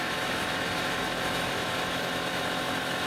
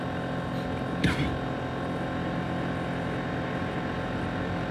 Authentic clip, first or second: second